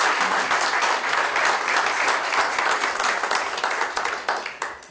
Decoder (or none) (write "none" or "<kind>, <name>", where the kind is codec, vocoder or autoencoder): none